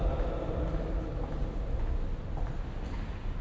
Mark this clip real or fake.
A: real